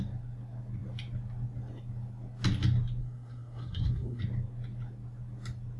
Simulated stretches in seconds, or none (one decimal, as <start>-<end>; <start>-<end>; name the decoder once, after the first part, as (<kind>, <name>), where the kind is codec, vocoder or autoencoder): 3.0-4.2 (codec, SNAC)